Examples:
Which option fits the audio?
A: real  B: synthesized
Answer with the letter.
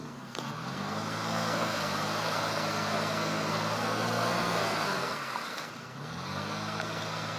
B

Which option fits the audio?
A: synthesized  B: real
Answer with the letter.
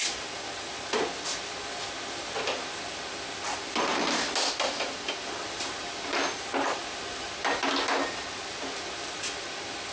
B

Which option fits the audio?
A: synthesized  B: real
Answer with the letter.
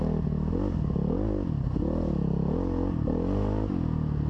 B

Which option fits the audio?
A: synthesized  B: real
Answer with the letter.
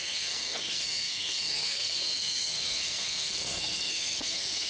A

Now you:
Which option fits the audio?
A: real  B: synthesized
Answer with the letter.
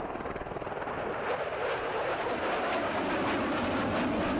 A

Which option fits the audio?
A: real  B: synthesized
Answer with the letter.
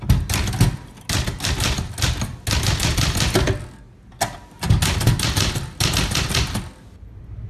A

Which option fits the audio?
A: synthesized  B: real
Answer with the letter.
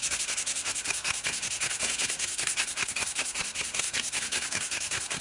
A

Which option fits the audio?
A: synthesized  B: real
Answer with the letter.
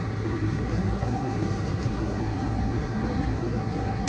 A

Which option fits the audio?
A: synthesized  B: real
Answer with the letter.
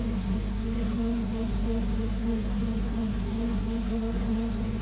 A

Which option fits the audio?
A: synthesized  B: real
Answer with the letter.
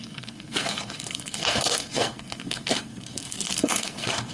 A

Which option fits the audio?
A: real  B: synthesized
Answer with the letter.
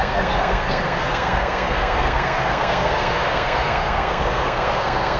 B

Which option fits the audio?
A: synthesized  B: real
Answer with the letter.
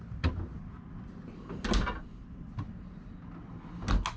B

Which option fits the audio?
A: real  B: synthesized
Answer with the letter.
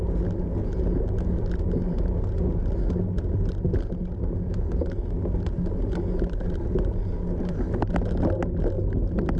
A